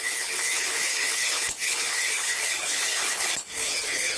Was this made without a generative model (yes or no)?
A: no